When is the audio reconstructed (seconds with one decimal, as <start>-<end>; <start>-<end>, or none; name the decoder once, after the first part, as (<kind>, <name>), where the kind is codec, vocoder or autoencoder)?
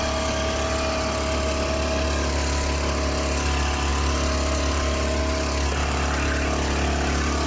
none